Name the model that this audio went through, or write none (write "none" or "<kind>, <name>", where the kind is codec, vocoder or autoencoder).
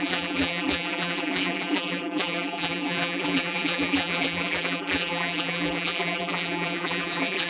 vocoder, BigVGAN v2